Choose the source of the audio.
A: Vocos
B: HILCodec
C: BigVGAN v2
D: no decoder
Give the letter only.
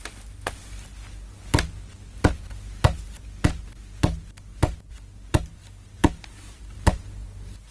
D